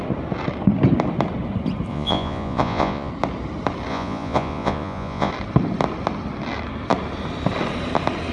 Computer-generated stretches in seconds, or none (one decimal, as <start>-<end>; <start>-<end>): 1.9-3.1; 3.9-5.3